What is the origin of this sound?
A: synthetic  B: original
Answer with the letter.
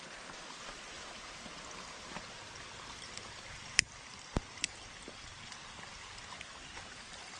B